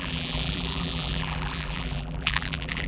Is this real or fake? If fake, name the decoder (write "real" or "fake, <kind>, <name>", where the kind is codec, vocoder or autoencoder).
fake, vocoder, BigVGAN v2